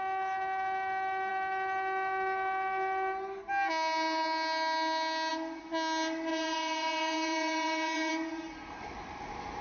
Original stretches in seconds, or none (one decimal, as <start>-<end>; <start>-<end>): 0.0-6.3; 8.1-9.6